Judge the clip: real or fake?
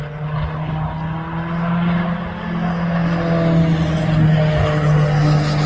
real